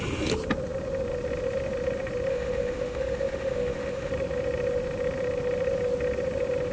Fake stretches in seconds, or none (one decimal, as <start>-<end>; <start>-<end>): 2.3-4.1